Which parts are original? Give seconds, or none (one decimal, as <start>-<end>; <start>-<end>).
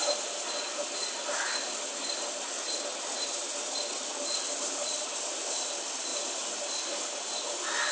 0.0-6.1; 6.6-7.9